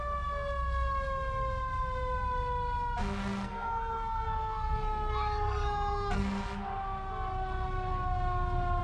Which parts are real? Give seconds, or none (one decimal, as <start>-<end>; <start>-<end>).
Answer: 0.0-3.2; 6.4-8.8